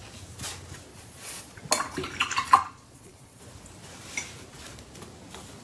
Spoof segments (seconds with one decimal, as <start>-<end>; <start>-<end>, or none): 0.9-1.6; 2.6-3.4